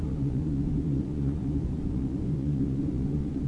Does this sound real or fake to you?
fake